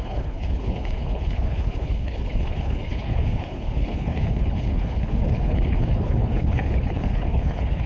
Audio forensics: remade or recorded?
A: remade